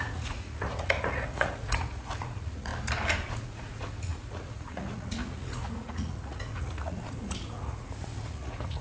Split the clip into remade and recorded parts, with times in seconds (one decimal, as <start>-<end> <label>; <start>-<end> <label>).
0.0-2.7 remade; 2.7-3.3 recorded; 3.3-8.8 remade